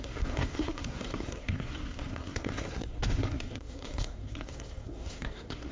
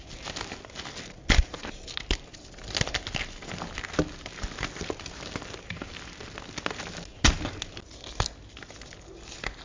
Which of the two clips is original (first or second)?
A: second